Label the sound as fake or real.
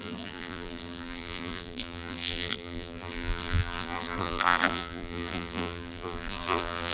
fake